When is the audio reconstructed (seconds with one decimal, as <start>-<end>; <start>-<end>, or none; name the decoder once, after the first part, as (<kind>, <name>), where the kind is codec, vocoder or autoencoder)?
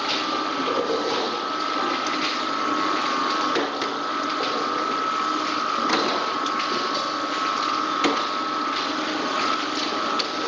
none